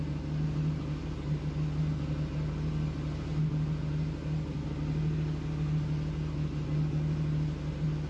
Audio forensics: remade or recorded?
recorded